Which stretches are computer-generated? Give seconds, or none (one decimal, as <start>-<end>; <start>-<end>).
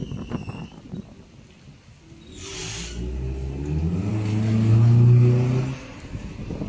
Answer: none